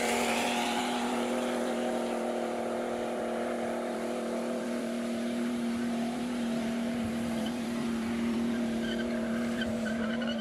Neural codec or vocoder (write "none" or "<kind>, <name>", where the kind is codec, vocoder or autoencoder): vocoder, BigVGAN v2